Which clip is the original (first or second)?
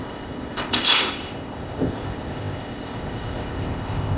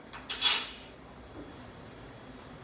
second